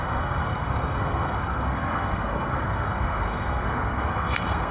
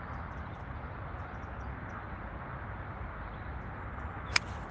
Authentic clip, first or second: second